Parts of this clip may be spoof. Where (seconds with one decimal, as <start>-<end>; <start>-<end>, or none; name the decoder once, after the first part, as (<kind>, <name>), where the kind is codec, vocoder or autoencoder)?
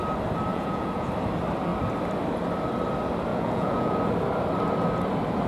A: 0.5-1.1 (vocoder, Vocos); 3.3-4.0